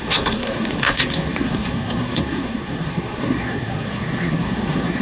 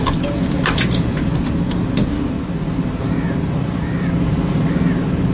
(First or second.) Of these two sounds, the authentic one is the second